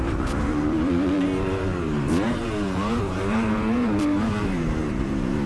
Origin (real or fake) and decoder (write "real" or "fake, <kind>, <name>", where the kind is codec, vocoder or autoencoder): fake, vocoder, BigVGAN v2